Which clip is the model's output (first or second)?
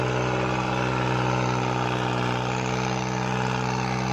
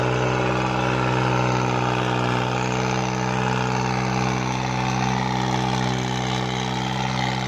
first